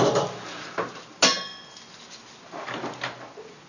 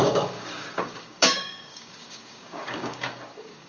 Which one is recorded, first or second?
first